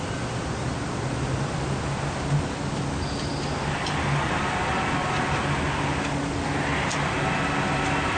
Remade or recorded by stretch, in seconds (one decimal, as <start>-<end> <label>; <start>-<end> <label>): 0.0-8.2 recorded